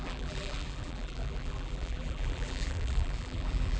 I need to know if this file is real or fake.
fake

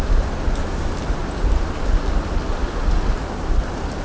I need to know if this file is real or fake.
real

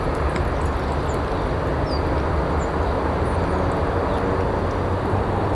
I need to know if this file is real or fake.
real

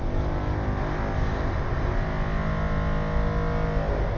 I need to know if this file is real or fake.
real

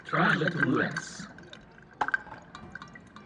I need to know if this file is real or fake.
real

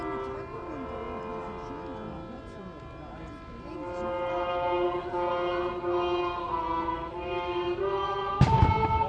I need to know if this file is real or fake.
real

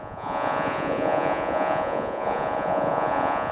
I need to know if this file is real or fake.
fake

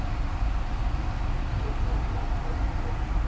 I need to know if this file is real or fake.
real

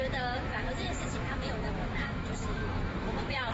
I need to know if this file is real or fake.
fake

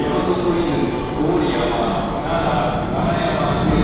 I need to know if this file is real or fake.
real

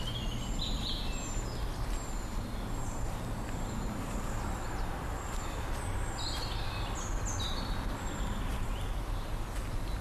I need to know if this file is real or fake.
real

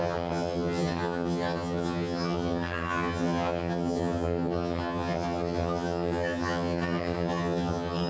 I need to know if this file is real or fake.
fake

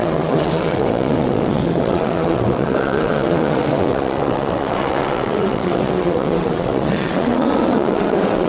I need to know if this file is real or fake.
fake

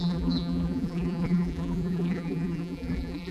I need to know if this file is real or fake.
fake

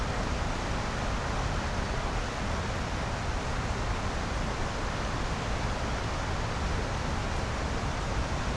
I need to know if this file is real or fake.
real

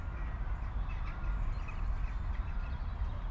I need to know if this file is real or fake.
real